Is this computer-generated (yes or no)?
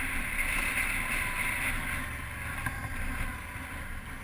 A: no